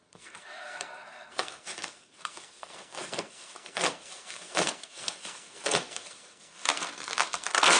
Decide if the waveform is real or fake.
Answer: fake